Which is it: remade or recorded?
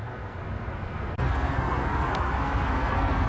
remade